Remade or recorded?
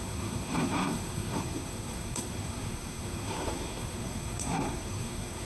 remade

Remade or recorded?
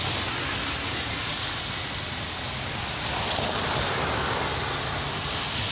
recorded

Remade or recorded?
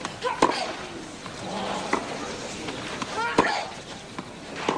recorded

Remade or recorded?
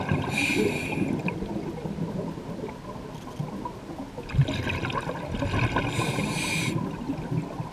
recorded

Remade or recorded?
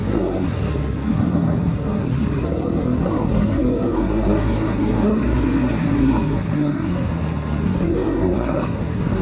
remade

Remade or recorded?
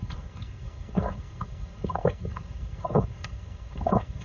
remade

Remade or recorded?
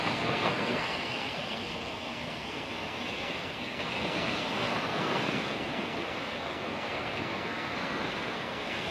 remade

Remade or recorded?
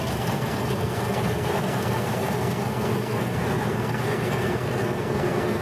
remade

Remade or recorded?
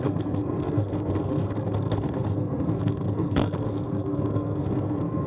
remade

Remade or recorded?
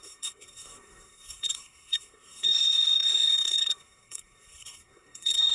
remade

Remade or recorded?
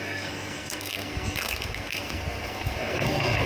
remade